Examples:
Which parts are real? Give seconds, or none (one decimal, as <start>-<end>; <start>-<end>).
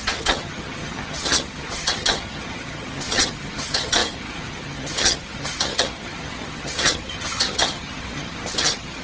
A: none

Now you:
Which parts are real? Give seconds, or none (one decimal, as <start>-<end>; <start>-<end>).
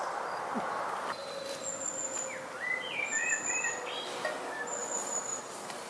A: 0.0-4.8; 5.4-5.9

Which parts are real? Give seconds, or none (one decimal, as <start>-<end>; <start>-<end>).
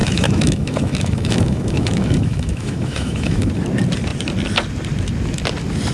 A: 3.5-5.9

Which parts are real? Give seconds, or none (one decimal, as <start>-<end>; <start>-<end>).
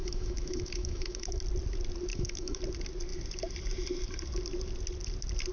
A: 1.4-2.1; 2.6-5.5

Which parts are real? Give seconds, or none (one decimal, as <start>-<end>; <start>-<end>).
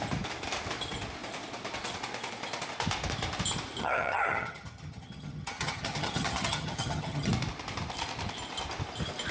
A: 0.0-3.8; 7.3-9.3